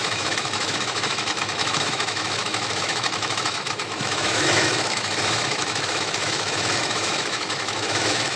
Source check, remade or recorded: remade